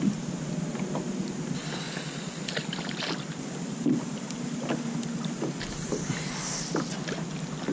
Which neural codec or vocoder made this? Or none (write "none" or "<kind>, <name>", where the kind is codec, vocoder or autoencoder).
none